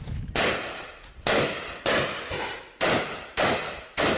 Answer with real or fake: real